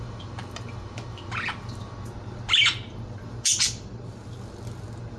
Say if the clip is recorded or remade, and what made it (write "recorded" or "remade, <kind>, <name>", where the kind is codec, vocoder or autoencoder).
recorded